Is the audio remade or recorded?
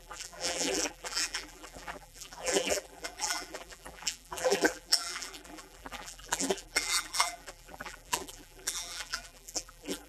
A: remade